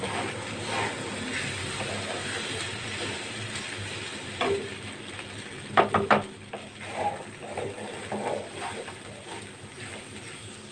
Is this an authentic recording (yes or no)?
yes